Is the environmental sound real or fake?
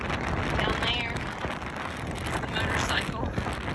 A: real